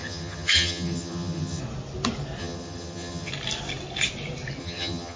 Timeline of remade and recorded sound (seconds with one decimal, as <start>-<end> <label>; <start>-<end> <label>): 0.0-1.6 remade; 1.6-2.4 recorded; 2.4-3.3 remade; 3.3-4.6 recorded; 4.6-5.2 remade